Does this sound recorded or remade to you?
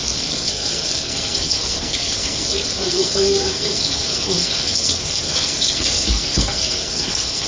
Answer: remade